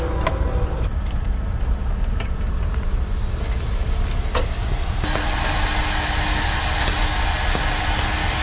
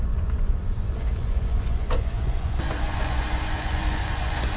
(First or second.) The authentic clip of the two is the first